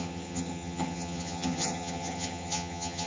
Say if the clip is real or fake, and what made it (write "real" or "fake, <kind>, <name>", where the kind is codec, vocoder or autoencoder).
fake, vocoder, HiFi-GAN